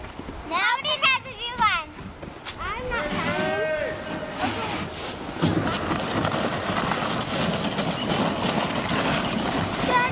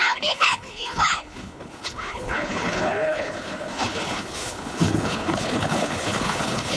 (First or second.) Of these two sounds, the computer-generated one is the second